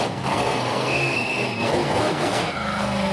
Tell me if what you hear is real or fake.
fake